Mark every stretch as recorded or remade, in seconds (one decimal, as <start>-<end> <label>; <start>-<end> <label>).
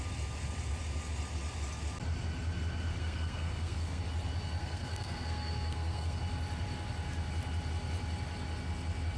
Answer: 0.0-2.9 recorded; 2.9-4.0 remade; 4.0-4.6 recorded; 4.6-6.2 remade; 6.2-9.2 recorded